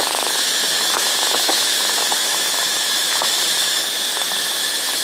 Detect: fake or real fake